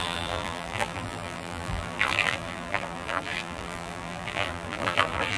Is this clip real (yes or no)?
no